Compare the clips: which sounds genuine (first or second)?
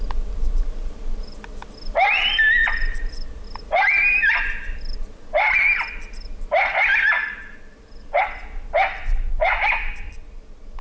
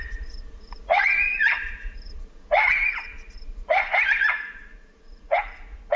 first